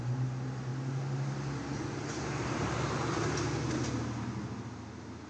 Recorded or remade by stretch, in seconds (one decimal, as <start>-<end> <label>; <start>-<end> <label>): 0.0-5.3 recorded